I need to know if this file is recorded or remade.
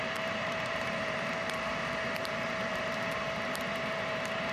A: remade